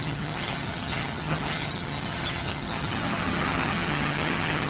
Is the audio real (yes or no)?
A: no